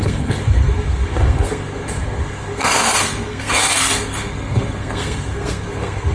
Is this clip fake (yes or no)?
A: yes